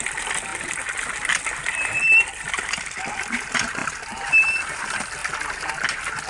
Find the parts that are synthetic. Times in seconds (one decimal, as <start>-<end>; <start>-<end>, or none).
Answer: 0.0-5.2